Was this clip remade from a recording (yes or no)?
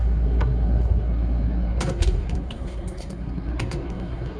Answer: yes